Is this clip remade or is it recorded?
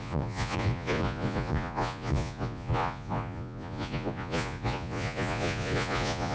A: remade